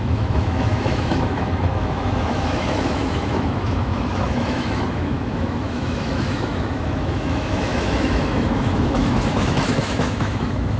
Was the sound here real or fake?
fake